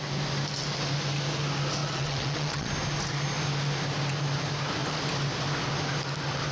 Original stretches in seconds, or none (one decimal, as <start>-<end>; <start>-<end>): 0.0-1.8; 2.7-6.5